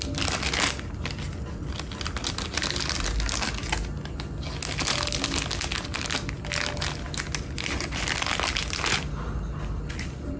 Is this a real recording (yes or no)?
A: yes